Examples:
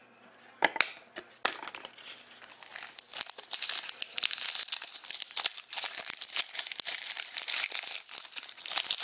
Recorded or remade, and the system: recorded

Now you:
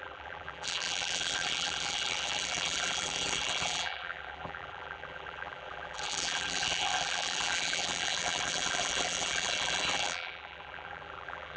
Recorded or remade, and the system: remade, vocoder, BigVGAN v2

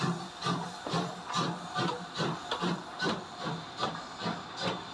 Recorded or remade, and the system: recorded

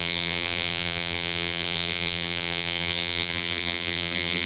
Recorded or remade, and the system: remade, vocoder, BigVGAN v2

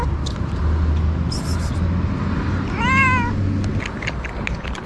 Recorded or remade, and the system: recorded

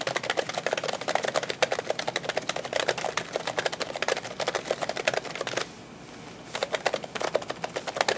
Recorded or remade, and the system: recorded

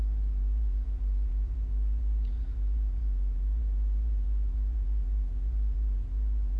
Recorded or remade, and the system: remade, vocoder, BigVGAN v2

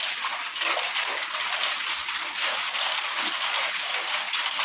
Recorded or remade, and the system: recorded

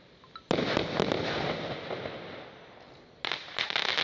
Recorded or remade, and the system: recorded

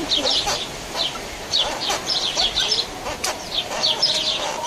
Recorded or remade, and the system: remade, vocoder, BigVGAN v2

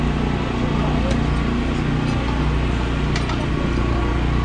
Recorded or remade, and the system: recorded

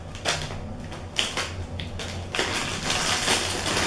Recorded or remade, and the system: recorded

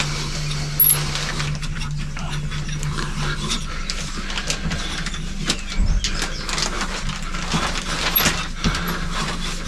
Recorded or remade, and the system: recorded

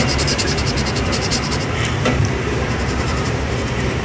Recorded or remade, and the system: remade, vocoder, BigVGAN v2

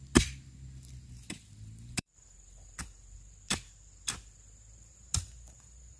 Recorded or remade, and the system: remade, vocoder, BigVGAN v2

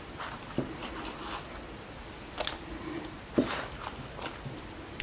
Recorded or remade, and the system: recorded